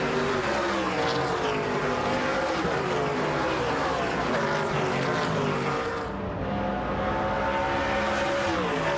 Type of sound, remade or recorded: recorded